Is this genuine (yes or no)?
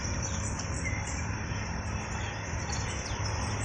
yes